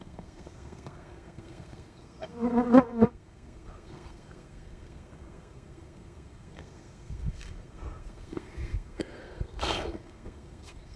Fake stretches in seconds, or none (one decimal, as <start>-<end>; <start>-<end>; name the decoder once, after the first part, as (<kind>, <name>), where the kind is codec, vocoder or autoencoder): 0.0-11.0 (codec, SNAC)